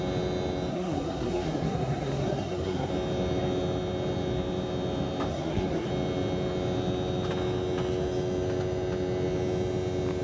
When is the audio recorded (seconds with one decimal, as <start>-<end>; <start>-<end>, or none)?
0.0-0.7; 2.9-5.3; 5.9-10.2